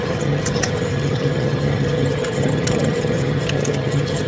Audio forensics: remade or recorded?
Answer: remade